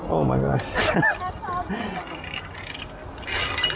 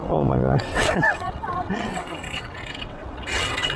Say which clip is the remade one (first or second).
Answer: second